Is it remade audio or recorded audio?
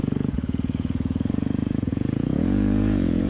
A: remade